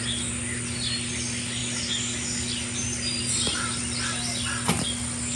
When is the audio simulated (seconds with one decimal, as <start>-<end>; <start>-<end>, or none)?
none